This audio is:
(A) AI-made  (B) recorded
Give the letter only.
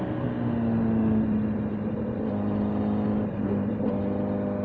B